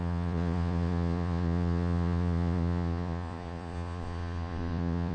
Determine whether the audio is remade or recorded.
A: remade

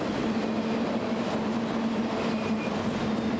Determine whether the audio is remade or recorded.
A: recorded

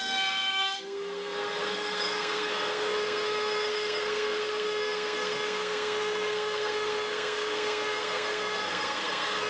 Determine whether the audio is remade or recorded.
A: remade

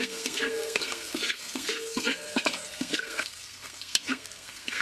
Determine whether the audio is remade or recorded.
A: remade